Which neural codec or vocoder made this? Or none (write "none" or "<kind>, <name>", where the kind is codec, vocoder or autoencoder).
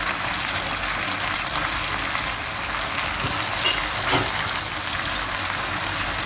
none